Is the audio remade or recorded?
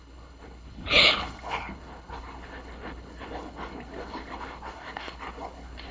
remade